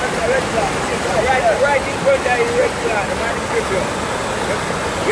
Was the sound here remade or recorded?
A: recorded